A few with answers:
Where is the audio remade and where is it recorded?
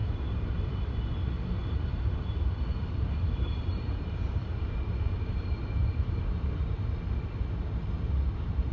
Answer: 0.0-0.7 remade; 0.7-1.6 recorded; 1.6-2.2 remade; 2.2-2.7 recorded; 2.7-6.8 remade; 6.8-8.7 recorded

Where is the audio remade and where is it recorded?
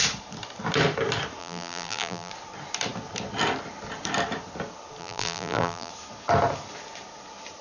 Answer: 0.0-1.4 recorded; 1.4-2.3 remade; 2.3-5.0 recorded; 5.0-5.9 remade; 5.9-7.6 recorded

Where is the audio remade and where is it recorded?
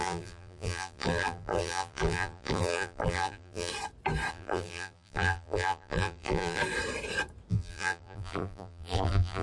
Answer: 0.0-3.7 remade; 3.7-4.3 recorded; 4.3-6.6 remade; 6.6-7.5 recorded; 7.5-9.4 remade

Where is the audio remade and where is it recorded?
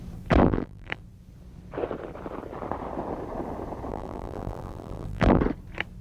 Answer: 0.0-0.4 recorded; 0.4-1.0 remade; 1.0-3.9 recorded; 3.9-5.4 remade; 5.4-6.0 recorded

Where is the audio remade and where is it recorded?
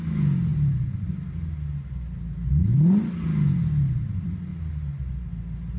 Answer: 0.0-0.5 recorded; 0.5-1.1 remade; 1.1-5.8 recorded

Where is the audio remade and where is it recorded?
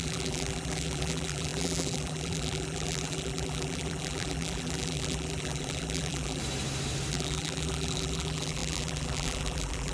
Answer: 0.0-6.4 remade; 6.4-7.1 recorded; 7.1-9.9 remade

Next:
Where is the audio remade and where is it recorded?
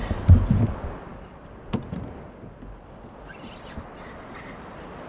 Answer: 0.0-1.1 recorded; 1.1-4.2 remade; 4.2-5.1 recorded